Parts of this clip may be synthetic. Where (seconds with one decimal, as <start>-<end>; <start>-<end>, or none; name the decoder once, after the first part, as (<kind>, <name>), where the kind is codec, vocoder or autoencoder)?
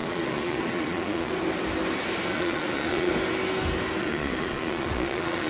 0.0-1.3 (vocoder, Vocos); 2.3-3.1; 4.0-5.5